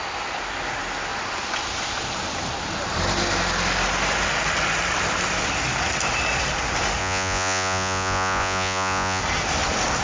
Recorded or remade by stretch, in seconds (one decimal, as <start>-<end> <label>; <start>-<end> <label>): 0.0-7.0 recorded; 7.0-9.2 remade; 9.2-10.0 recorded